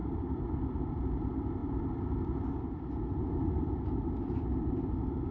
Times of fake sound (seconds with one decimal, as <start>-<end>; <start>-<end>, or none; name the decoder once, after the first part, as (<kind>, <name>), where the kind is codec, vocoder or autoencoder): 0.0-0.5 (vocoder, BigVGAN v2)